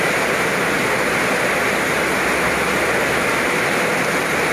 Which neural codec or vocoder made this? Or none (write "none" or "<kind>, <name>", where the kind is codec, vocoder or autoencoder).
none